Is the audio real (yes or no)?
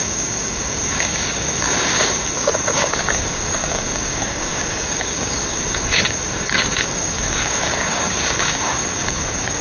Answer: no